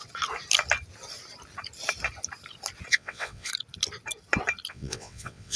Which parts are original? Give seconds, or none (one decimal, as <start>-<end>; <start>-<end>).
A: 0.0-2.9; 3.5-4.7